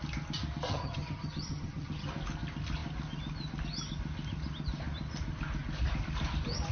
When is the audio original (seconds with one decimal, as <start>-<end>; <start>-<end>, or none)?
0.0-0.7; 2.1-6.7